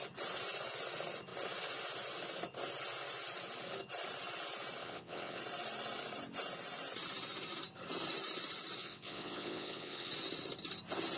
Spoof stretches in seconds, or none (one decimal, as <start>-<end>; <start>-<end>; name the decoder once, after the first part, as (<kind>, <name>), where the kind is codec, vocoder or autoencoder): 4.8-5.4 (vocoder, WaveNeXt); 8.8-10.1